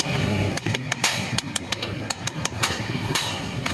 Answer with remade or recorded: remade